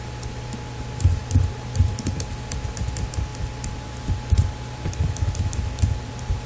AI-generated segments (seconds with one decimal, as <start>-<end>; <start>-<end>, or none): none